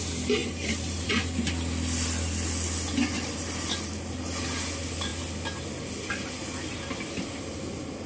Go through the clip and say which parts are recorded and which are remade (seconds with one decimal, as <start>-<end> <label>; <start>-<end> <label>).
0.0-0.4 recorded; 0.4-1.5 remade; 1.5-8.1 recorded